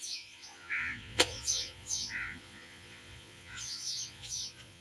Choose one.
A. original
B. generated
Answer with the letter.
B